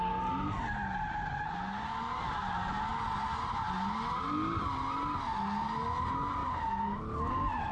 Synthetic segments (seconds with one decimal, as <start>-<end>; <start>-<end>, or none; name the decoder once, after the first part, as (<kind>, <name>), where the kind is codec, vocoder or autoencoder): 6.4-7.0 (vocoder, BigVGAN v2)